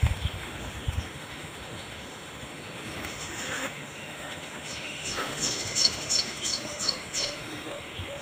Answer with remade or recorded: remade